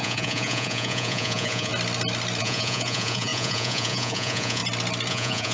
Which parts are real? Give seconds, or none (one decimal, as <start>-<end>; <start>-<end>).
1.7-2.4; 4.6-5.1